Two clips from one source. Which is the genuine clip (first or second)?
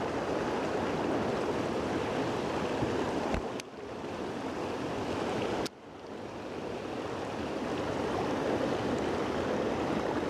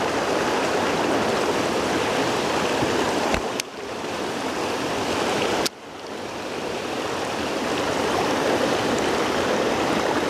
first